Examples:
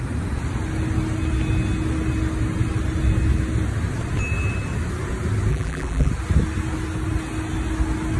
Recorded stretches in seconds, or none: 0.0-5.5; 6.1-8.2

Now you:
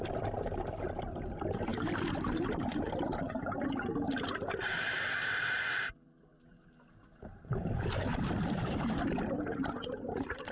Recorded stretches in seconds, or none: 0.0-1.7; 5.1-10.5

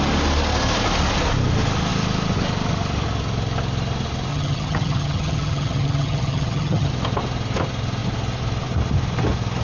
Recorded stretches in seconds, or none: 0.0-4.3; 6.9-9.6